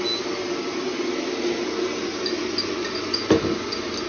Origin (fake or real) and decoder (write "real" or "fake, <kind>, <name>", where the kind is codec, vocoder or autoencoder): real